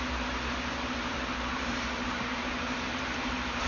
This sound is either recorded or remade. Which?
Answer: remade